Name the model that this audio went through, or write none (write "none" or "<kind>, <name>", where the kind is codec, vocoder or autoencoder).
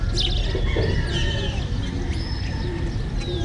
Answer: none